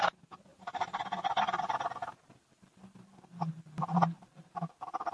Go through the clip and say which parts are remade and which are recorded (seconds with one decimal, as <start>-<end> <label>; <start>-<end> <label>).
0.0-0.5 recorded; 0.5-1.0 remade; 1.0-2.0 recorded; 2.0-5.1 remade